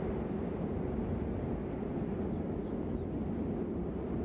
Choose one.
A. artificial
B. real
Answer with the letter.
B